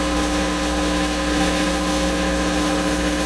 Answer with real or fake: fake